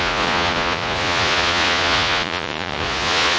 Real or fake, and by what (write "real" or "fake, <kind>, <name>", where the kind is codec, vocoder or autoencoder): fake, vocoder, Vocos